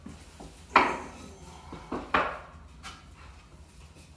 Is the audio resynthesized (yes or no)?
no